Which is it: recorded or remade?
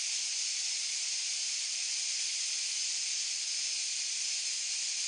recorded